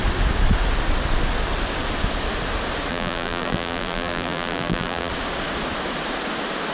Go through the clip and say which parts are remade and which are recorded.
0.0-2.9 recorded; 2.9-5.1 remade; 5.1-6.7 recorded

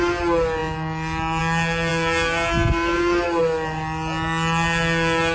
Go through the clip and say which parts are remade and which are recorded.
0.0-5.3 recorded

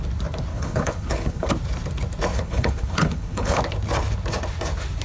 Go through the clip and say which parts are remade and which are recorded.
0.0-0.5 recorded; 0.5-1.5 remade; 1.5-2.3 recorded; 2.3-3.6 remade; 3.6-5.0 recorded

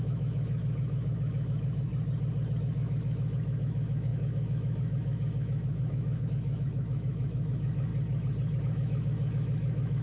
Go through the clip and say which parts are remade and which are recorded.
0.0-1.9 remade; 1.9-2.6 recorded; 2.6-7.9 remade; 7.9-8.6 recorded; 8.6-10.0 remade

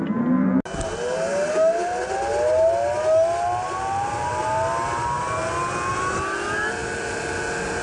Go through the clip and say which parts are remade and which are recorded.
0.0-7.8 recorded

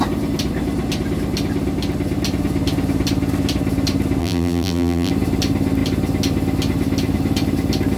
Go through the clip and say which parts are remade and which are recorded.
0.0-4.2 recorded; 4.2-5.1 remade; 5.1-8.0 recorded